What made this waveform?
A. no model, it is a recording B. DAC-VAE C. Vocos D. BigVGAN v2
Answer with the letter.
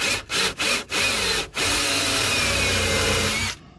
A